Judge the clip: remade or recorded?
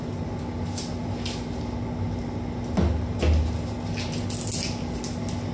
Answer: recorded